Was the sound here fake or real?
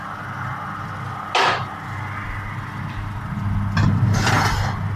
real